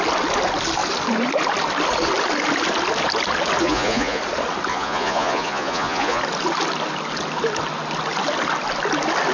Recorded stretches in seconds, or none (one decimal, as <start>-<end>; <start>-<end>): 0.0-3.6; 4.2-4.7; 6.2-9.3